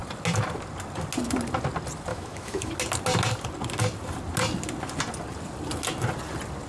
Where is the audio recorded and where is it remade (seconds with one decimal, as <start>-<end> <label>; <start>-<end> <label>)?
0.0-2.1 recorded; 2.1-2.7 remade; 2.7-6.7 recorded